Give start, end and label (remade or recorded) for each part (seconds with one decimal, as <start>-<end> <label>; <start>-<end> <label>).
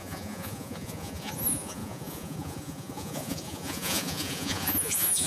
0.0-5.3 remade